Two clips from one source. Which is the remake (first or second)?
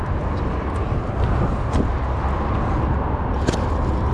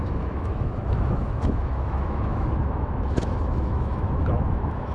second